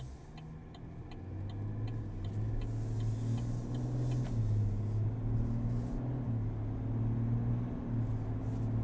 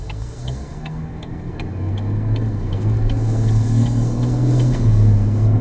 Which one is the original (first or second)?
first